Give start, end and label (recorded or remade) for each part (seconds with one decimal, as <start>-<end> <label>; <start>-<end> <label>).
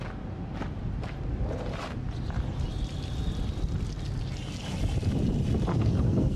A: 0.0-5.7 recorded; 5.7-6.4 remade